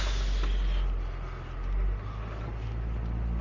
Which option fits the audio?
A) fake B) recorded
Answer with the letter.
B